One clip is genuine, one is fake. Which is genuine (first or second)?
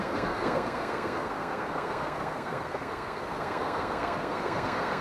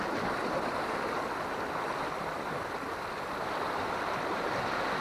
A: second